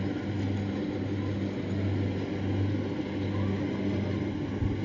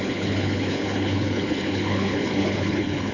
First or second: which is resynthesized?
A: second